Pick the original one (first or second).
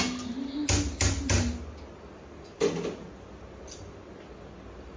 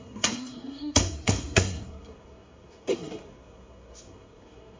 first